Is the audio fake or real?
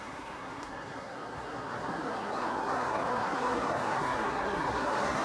fake